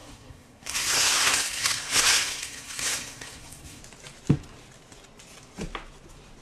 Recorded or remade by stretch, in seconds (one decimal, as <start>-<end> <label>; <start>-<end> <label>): 0.0-3.8 remade; 3.8-6.4 recorded